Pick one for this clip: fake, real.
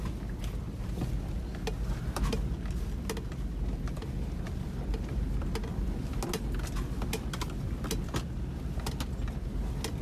real